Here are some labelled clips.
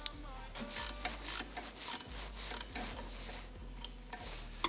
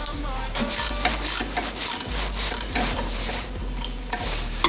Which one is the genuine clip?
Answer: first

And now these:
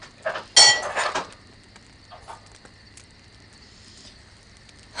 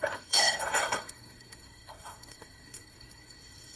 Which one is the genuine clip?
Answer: first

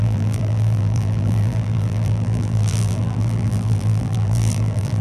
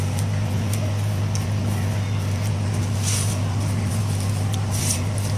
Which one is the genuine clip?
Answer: second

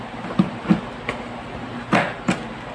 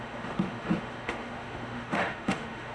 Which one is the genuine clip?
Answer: first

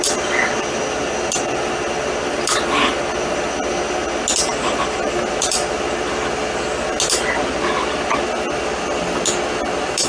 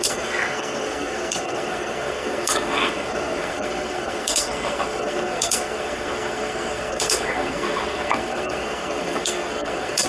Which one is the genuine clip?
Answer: first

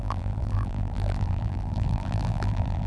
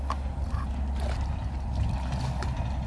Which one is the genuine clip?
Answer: second